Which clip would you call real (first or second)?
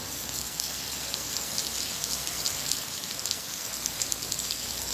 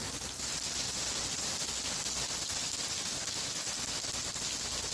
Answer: second